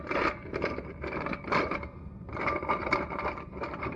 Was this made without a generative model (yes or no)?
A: no